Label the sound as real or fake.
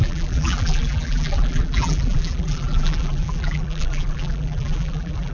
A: fake